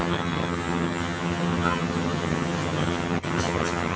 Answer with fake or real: fake